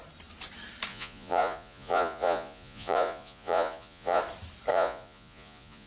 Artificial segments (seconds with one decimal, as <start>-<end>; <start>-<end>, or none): 0.9-4.2; 4.7-5.9